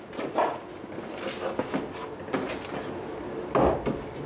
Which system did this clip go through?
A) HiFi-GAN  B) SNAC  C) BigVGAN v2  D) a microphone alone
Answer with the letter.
D